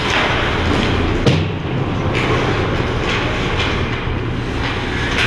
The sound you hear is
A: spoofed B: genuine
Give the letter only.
B